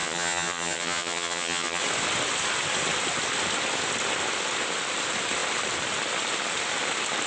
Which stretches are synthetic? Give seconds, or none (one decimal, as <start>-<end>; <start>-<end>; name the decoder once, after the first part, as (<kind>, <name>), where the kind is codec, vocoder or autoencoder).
0.0-1.8 (vocoder, HiFi-GAN)